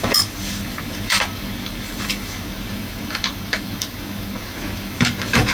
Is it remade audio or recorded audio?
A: remade